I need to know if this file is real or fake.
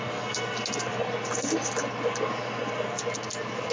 real